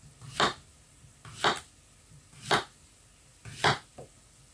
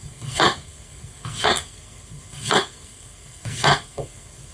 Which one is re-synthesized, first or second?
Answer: second